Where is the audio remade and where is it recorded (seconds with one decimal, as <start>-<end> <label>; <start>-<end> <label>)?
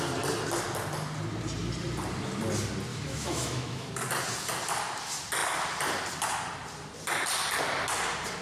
0.0-2.9 recorded; 2.9-3.9 remade; 3.9-8.4 recorded